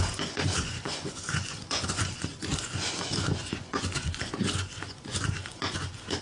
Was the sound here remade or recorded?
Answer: remade